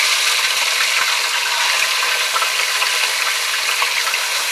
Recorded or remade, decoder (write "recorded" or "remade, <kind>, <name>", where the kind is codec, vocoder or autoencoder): recorded